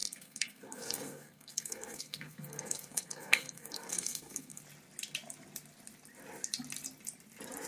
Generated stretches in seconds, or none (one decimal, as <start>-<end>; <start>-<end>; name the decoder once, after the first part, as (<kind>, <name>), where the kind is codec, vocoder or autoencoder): 0.0-4.6 (codec, SNAC)